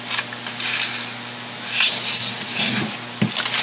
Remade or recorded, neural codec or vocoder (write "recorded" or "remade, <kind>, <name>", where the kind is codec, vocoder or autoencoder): recorded